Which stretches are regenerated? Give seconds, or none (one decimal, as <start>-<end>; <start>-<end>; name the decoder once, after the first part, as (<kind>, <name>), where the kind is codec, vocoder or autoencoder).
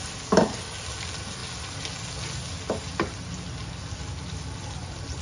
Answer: none